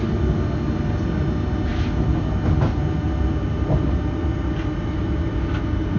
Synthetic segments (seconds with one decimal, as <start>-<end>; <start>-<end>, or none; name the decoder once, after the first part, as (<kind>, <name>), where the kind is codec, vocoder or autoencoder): none